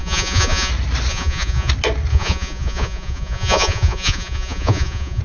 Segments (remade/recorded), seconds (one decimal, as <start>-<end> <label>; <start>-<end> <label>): 0.0-0.7 remade; 0.7-1.1 recorded; 1.1-1.7 remade; 1.7-2.1 recorded; 2.1-5.2 remade